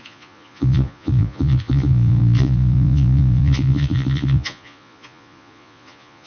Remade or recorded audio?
remade